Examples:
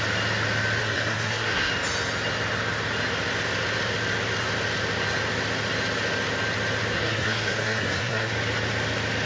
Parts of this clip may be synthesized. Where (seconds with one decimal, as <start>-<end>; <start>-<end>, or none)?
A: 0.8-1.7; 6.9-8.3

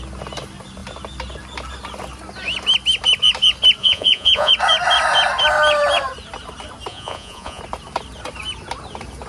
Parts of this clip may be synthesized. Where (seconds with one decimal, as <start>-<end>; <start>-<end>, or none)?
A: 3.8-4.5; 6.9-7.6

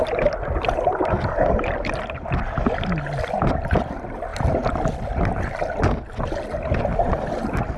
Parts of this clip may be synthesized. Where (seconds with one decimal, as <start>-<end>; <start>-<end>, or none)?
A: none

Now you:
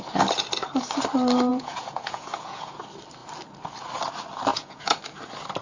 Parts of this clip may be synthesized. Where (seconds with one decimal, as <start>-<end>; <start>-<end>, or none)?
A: 1.5-2.8; 4.5-5.0

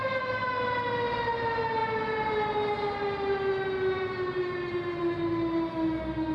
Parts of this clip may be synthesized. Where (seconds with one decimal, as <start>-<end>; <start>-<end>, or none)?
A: none